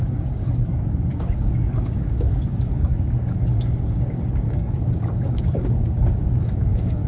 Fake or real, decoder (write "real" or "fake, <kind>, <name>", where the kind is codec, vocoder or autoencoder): fake, codec, DAC